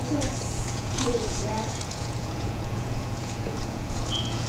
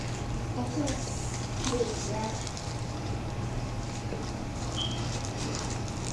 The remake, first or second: first